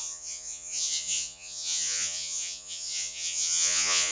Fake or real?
fake